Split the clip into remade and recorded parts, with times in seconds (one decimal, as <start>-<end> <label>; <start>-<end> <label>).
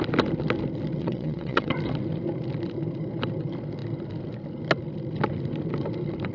0.0-1.0 recorded; 1.0-1.7 remade; 1.7-6.3 recorded